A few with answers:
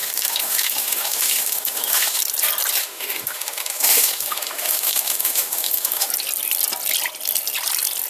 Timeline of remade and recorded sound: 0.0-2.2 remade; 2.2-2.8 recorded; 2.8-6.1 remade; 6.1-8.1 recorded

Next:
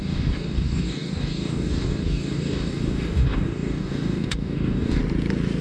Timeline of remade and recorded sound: 0.0-5.0 remade; 5.0-5.6 recorded

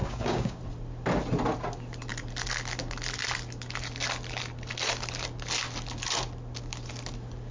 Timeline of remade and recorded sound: 0.0-0.6 remade; 0.6-7.5 recorded

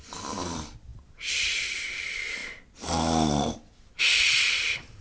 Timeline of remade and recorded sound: 0.0-0.9 remade; 0.9-2.0 recorded; 2.0-2.4 remade; 2.4-4.0 recorded; 4.0-5.0 remade

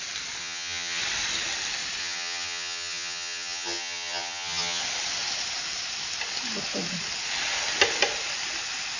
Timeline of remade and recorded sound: 0.0-0.4 recorded; 0.4-1.0 remade; 1.0-2.0 recorded; 2.0-4.8 remade; 4.8-9.0 recorded

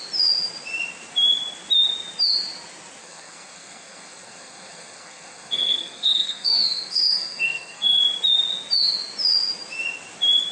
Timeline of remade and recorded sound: 0.0-3.0 recorded; 3.0-8.0 remade; 8.0-10.5 recorded

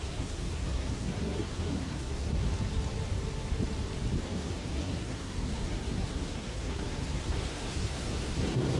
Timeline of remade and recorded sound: 0.0-2.5 remade; 2.5-4.2 recorded; 4.2-8.8 remade

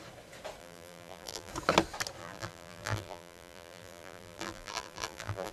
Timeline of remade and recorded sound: 0.0-0.6 recorded; 0.6-1.5 remade; 1.5-2.2 recorded; 2.2-5.5 remade